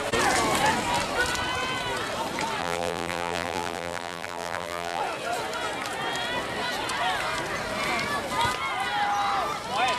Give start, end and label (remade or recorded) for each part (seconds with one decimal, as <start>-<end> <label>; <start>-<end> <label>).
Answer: 0.0-2.6 recorded; 2.6-5.0 remade; 5.0-10.0 recorded